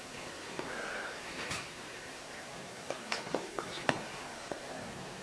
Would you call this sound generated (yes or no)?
yes